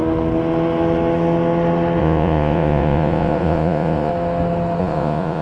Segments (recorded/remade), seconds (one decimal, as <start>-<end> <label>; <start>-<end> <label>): 0.0-2.0 recorded; 2.0-4.1 remade; 4.1-4.8 recorded; 4.8-5.4 remade